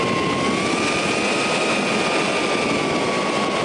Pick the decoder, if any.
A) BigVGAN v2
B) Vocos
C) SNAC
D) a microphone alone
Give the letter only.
D